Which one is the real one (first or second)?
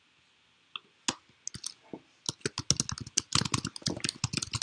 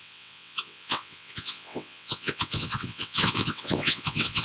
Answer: first